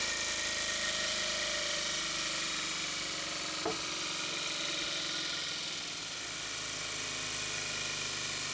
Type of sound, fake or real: real